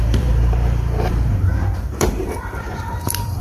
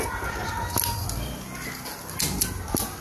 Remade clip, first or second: first